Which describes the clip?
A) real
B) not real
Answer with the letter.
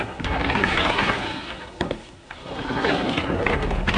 B